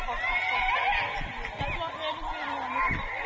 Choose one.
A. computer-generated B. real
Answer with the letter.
B